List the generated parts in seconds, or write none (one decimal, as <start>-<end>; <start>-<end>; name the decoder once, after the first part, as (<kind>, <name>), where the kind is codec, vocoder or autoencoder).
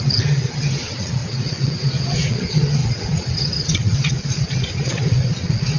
0.0-5.8 (vocoder, WaveNeXt)